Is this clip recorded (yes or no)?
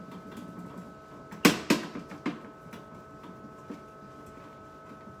yes